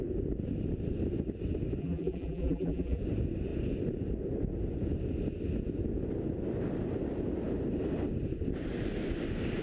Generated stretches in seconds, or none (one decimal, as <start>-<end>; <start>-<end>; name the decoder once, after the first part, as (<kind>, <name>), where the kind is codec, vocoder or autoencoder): 1.8-3.0 (vocoder, BigVGAN v2)